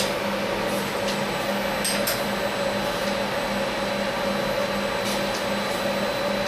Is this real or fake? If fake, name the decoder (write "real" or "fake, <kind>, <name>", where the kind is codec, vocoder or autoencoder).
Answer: real